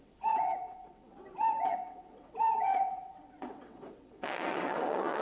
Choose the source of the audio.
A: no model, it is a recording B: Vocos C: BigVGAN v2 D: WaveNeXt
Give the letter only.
D